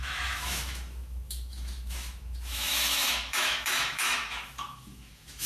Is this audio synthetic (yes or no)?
yes